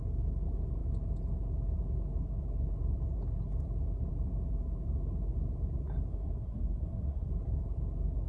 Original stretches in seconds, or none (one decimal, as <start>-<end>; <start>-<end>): 0.0-6.1; 7.3-8.3